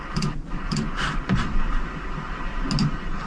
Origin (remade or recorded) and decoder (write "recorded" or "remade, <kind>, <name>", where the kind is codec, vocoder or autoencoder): recorded